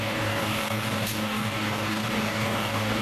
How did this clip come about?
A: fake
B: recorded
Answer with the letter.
A